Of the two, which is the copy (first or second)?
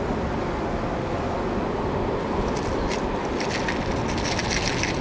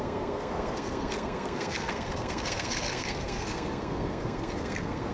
second